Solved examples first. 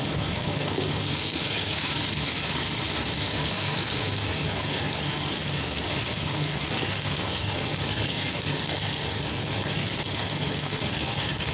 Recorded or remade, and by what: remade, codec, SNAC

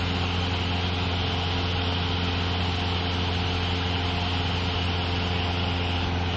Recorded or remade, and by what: recorded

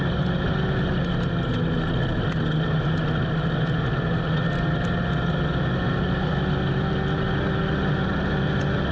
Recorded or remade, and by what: recorded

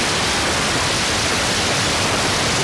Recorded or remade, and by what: recorded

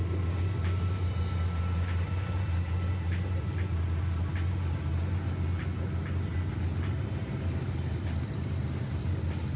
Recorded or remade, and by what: recorded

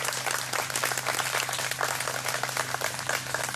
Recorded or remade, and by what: recorded